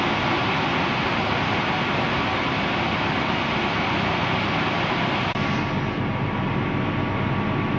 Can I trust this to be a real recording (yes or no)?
yes